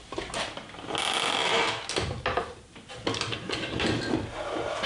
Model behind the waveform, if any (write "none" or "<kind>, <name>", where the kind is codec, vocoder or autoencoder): none